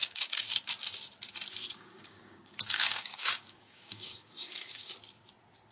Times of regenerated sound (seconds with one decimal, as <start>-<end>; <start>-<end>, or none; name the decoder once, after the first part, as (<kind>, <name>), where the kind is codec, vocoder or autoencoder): 0.0-0.6 (codec, DAC); 1.6-4.9